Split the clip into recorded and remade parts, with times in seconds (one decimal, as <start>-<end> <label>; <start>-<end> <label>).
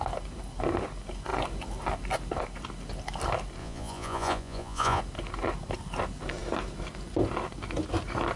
0.0-3.6 recorded; 3.6-5.0 remade; 5.0-8.4 recorded